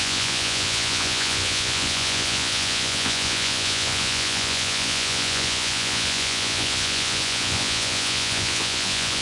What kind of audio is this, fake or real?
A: fake